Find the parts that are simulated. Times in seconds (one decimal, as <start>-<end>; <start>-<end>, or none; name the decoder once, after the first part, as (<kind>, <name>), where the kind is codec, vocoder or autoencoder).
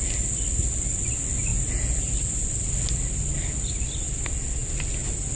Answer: none